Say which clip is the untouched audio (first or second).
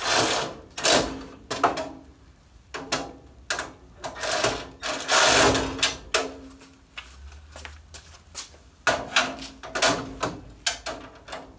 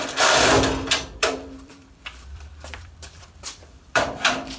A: first